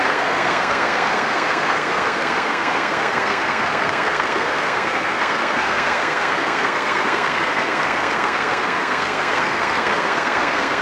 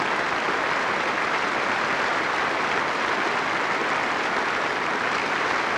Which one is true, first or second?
second